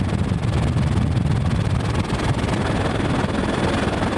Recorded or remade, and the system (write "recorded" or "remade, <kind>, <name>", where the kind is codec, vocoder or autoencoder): recorded